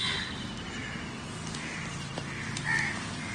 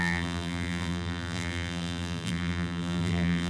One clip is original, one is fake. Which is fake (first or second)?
second